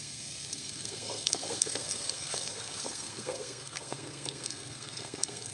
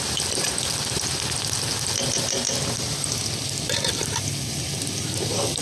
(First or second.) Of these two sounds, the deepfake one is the first